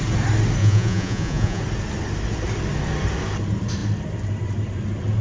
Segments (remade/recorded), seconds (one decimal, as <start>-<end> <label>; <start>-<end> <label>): 0.0-0.6 recorded; 0.6-1.6 remade; 1.6-5.2 recorded